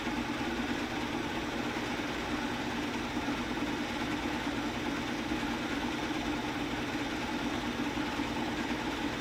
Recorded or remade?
recorded